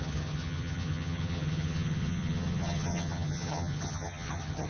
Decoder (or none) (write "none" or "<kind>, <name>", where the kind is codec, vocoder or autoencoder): vocoder, HiFi-GAN